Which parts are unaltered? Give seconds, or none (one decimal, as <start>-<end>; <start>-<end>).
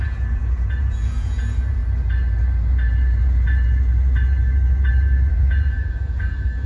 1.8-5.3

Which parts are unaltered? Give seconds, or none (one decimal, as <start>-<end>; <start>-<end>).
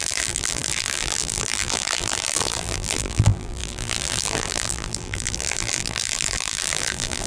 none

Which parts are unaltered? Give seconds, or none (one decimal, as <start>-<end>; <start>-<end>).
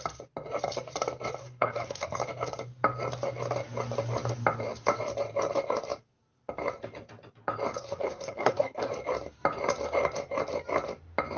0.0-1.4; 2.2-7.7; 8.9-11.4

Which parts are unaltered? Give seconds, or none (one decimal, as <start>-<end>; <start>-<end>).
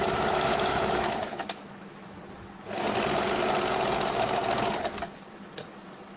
2.2-6.2